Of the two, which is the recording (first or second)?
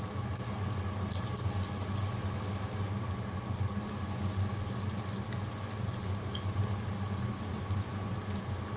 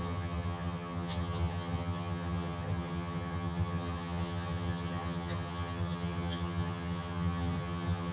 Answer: first